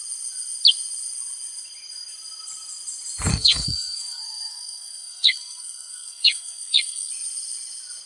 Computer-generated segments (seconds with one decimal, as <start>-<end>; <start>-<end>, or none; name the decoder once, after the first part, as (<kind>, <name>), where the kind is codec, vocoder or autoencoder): 3.3-7.1 (codec, SNAC)